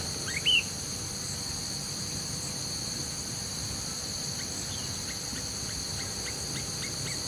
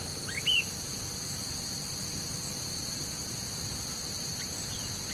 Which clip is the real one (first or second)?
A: first